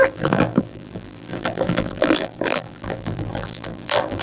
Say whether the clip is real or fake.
fake